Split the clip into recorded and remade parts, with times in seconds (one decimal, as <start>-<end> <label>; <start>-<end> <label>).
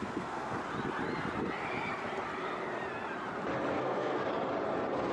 0.0-0.6 remade; 0.6-3.7 recorded; 3.7-4.2 remade; 4.2-5.1 recorded